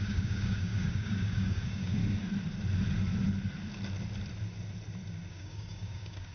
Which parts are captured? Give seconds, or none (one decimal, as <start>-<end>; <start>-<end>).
2.0-5.3